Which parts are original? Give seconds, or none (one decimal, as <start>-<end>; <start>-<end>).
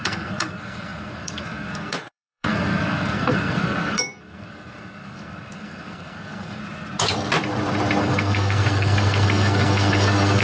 6.6-8.0